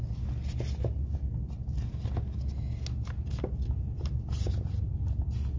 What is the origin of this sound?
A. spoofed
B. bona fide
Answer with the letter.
B